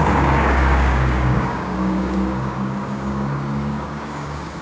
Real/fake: fake